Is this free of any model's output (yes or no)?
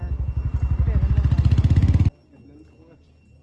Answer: yes